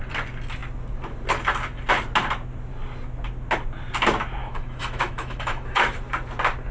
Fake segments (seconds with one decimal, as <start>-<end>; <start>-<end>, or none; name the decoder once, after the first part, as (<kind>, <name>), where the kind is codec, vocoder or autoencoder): 4.4-6.0 (autoencoder, DAC-VAE)